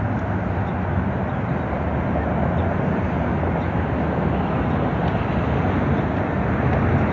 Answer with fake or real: real